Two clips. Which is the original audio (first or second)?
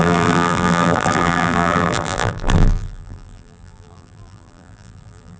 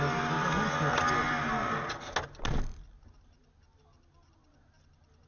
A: second